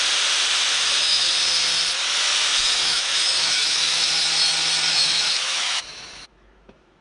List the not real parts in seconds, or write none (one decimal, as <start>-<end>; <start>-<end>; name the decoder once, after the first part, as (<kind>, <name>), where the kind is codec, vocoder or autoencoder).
0.7-1.3 (autoencoder, DAC-VAE); 2.5-4.1; 4.9-7.0